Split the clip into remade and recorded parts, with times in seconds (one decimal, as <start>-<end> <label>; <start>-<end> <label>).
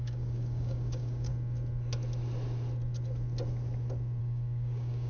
0.0-1.3 remade; 1.3-4.2 recorded; 4.2-5.1 remade